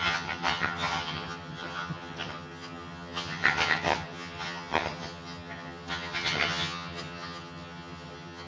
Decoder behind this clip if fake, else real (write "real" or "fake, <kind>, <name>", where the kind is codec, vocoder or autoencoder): fake, vocoder, HiFi-GAN